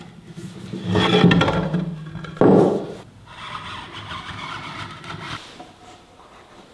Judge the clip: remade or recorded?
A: recorded